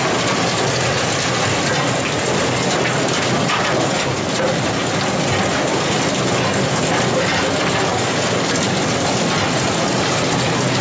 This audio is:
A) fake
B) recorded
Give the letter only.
B